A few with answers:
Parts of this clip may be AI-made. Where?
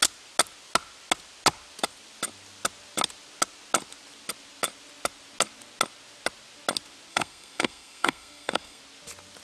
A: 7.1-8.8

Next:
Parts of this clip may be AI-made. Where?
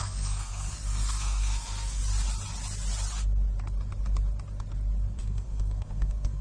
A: 0.0-2.0; 5.1-6.4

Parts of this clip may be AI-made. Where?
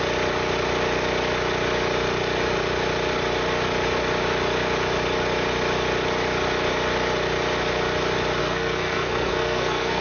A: 8.4-10.0